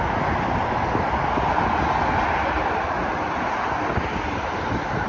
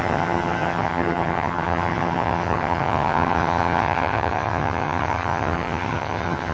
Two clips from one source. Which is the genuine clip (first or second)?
first